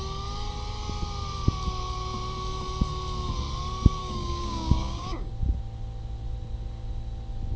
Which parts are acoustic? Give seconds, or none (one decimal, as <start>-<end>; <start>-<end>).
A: 0.0-4.0; 5.3-7.6